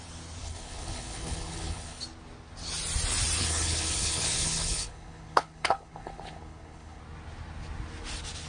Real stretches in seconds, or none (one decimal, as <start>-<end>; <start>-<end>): 0.0-0.4; 2.0-3.4; 7.0-8.5